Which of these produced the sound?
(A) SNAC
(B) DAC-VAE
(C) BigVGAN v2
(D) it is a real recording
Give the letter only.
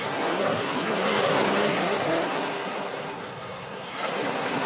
A